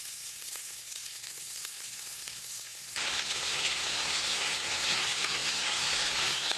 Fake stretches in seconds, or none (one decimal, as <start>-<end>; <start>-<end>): 0.0-6.6